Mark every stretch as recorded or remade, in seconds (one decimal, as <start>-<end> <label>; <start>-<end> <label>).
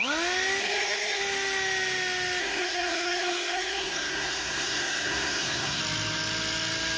0.0-0.6 recorded; 0.6-1.2 remade; 1.2-2.4 recorded; 2.4-5.8 remade; 5.8-7.0 recorded